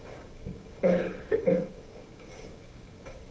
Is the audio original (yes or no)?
no